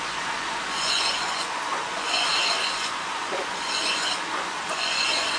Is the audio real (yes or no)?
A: no